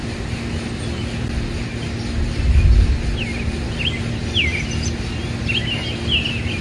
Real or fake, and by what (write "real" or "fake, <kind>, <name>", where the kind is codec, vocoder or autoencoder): real